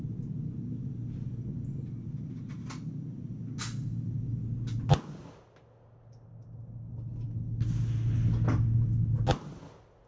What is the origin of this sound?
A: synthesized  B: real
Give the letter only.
B